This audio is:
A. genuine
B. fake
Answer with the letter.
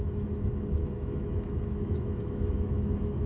B